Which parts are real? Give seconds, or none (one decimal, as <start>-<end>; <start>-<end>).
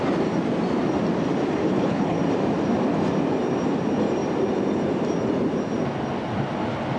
0.0-1.6; 2.2-7.0